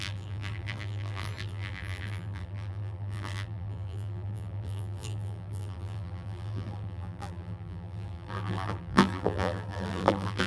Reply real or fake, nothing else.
fake